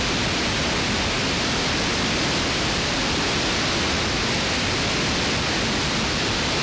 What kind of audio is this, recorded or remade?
recorded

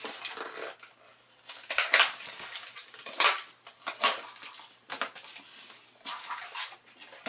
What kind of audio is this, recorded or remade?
recorded